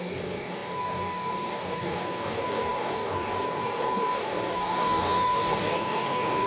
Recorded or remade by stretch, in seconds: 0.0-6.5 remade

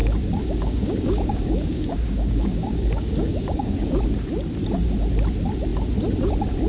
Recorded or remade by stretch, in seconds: 0.0-4.0 remade; 4.0-6.7 recorded

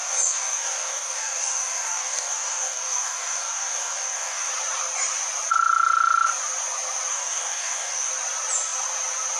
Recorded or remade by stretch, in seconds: 0.0-4.5 remade; 4.5-7.1 recorded; 7.1-8.1 remade; 8.1-9.4 recorded

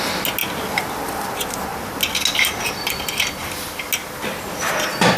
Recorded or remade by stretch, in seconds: 0.0-5.2 recorded

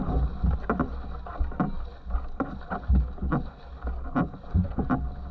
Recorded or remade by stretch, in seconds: 0.0-5.3 recorded

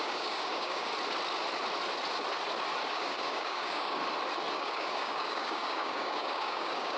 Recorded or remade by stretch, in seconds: 0.0-0.9 remade; 0.9-2.9 recorded; 2.9-4.0 remade; 4.0-4.5 recorded; 4.5-7.0 remade

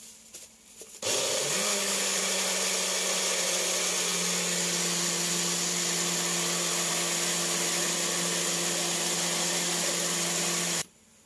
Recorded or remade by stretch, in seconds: 0.0-1.7 recorded; 1.7-2.2 remade; 2.2-11.3 recorded

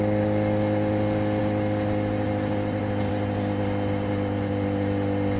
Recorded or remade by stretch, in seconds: 0.0-5.4 recorded